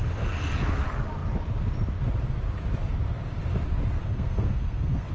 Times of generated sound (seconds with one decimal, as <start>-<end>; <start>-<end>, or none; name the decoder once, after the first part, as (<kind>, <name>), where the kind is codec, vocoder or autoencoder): 4.0-5.1 (codec, SNAC)